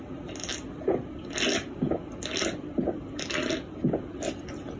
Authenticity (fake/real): real